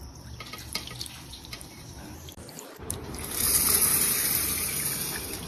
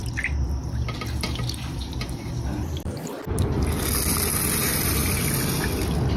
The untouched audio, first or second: second